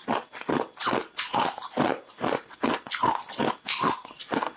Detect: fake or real real